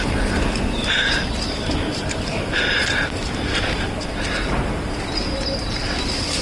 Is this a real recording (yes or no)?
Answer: no